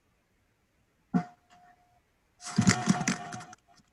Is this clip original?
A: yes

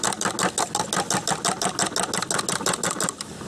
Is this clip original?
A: yes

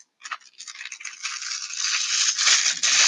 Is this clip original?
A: yes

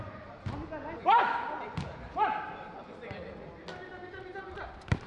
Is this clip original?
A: yes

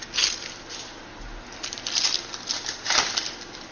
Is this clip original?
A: yes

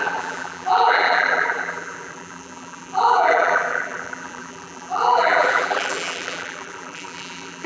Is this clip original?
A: no